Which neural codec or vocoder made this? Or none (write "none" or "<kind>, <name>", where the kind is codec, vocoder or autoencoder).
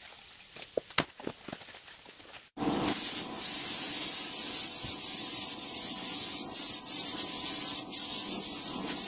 none